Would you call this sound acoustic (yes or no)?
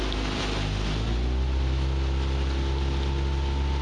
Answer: yes